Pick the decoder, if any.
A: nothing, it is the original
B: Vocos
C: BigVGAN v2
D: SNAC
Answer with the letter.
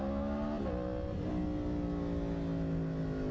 A